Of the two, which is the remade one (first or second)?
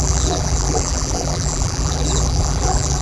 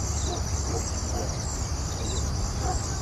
first